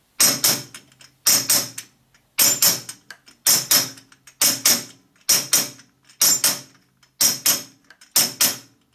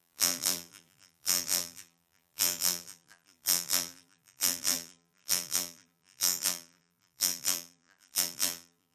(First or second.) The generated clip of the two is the second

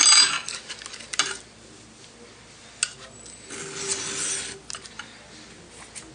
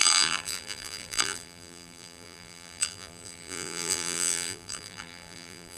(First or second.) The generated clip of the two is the second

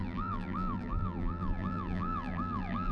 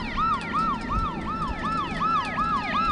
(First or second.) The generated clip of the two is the first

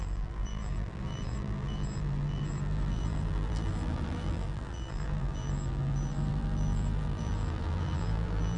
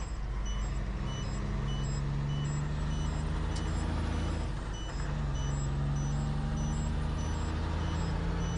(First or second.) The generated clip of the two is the first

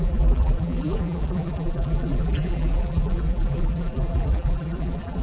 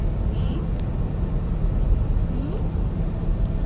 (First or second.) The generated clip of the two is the first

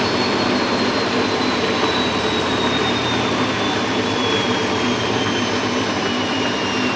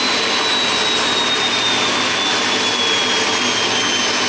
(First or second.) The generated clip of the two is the first